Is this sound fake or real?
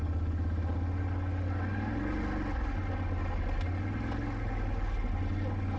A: real